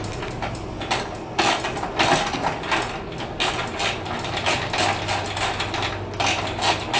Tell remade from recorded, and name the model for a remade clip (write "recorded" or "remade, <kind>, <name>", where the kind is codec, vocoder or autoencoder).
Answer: recorded